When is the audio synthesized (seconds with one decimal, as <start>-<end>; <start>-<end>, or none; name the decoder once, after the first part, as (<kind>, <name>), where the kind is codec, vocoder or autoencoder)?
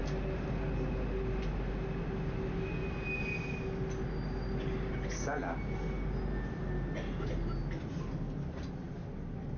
none